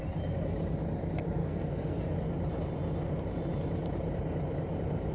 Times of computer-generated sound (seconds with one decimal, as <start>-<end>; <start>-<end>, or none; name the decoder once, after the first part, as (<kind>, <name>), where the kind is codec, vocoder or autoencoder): 1.4-2.0 (codec, SNAC)